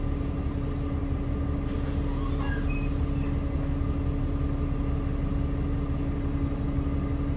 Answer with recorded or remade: recorded